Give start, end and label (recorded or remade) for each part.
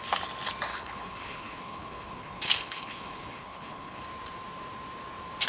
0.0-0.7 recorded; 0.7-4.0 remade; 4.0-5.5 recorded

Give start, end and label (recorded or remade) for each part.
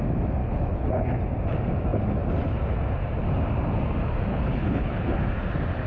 0.0-0.4 recorded; 0.4-1.0 remade; 1.0-4.3 recorded; 4.3-5.2 remade; 5.2-5.9 recorded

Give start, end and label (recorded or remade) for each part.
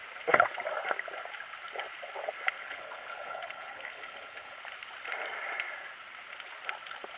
0.0-2.6 recorded; 2.6-4.6 remade; 4.6-7.2 recorded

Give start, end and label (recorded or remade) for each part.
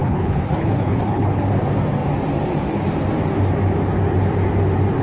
0.0-1.4 remade; 1.4-5.0 recorded